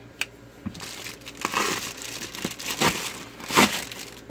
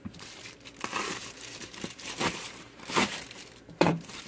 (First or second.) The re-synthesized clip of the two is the second